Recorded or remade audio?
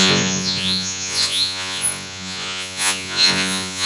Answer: remade